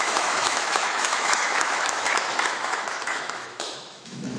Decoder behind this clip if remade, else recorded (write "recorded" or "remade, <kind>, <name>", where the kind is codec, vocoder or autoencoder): remade, autoencoder, DAC-VAE